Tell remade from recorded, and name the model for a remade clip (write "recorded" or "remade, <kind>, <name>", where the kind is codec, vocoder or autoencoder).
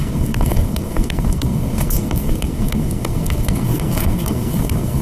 remade, codec, SNAC